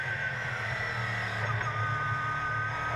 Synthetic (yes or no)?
no